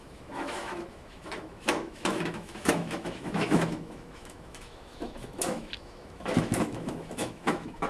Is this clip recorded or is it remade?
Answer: remade